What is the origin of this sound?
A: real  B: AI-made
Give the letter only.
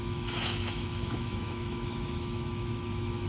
B